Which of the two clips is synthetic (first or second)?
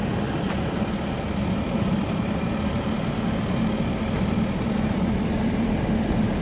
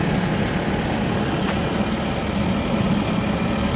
first